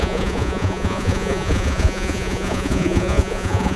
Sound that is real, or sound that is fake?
fake